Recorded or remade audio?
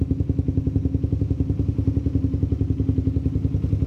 recorded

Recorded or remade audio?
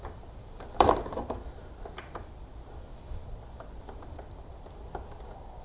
remade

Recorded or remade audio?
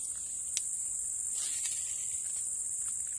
recorded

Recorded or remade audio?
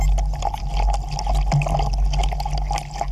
recorded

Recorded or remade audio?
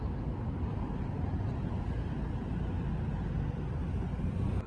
recorded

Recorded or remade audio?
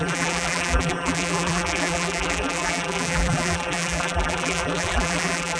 remade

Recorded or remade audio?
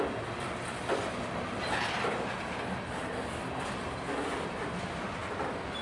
recorded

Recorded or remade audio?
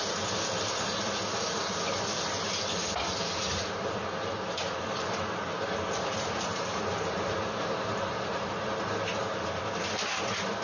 recorded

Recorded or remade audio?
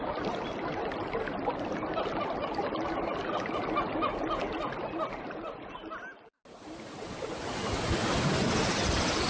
recorded